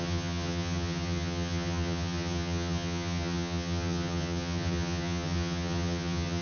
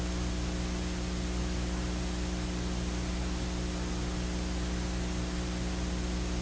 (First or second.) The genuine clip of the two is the second